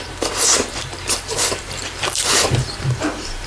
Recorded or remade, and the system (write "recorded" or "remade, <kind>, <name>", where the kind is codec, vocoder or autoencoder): remade, vocoder, BigVGAN v2